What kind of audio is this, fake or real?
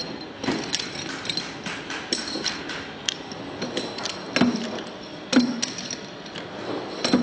real